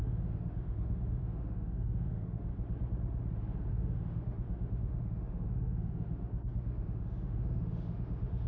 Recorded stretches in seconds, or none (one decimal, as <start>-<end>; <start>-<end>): 2.5-3.7